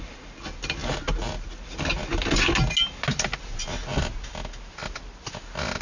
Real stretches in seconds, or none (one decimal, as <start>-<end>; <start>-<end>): 0.0-5.8